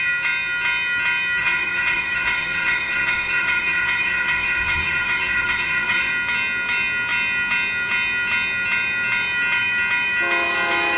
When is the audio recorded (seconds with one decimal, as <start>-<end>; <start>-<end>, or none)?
0.0-1.4; 6.1-11.0